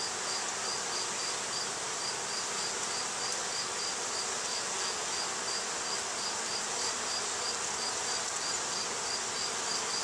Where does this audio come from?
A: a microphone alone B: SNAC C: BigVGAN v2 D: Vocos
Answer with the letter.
A